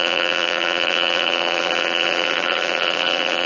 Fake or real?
fake